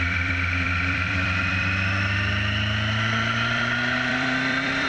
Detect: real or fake fake